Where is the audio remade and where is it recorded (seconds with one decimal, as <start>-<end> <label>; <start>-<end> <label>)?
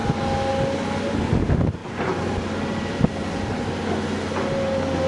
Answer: 0.0-1.8 recorded; 1.8-3.4 remade; 3.4-5.1 recorded